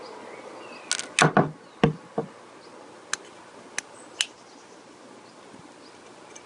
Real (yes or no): yes